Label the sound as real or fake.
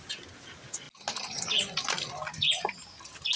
real